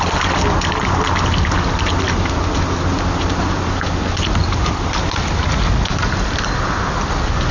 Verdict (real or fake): real